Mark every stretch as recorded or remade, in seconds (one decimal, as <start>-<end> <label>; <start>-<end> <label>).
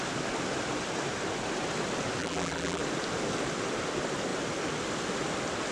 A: 0.0-2.2 recorded; 2.2-2.8 remade; 2.8-5.7 recorded